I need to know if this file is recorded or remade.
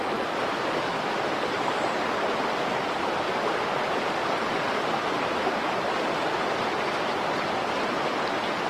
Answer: recorded